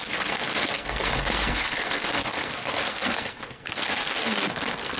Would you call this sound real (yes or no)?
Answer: no